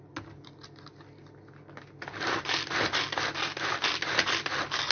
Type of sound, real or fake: real